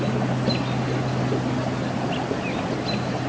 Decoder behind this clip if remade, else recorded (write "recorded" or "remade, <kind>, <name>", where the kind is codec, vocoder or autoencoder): recorded